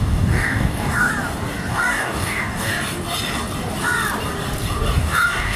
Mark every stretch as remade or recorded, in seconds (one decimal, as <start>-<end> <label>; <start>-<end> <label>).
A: 0.0-1.1 remade; 1.1-1.7 recorded; 1.7-2.7 remade; 2.7-5.0 recorded; 5.0-5.6 remade